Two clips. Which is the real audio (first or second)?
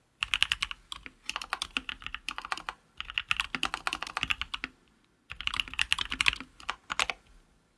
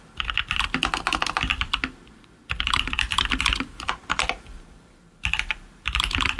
first